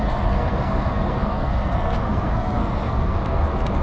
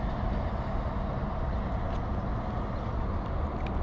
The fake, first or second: first